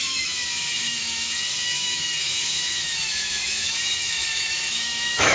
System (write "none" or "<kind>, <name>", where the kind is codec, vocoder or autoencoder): autoencoder, DAC-VAE